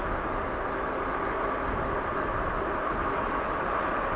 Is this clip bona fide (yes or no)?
yes